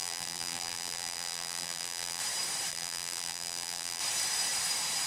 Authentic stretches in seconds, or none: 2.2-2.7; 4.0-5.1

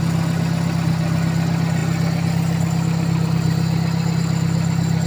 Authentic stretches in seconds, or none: 0.0-5.1

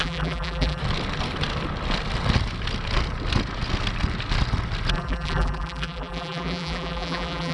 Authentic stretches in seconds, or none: 0.8-4.9

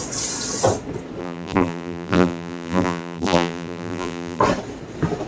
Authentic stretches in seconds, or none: 0.0-1.2; 4.4-5.3

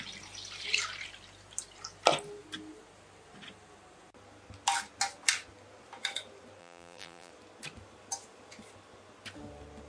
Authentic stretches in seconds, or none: 0.0-6.6; 7.3-9.9

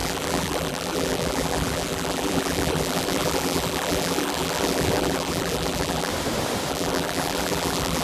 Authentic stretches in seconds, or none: 6.1-6.7

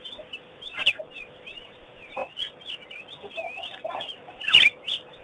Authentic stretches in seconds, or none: 2.2-4.3

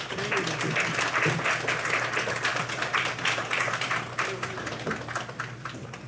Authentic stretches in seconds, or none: 0.0-2.5; 4.7-6.1